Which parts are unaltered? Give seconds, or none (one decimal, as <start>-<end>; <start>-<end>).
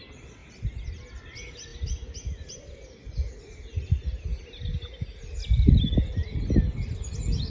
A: 0.0-7.5